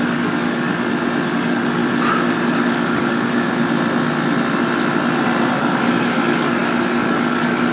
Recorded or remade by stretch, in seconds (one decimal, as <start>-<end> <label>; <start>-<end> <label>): 0.0-0.7 remade; 0.7-1.3 recorded; 1.3-1.8 remade; 1.8-2.4 recorded; 2.4-3.5 remade; 3.5-5.6 recorded; 5.6-7.7 remade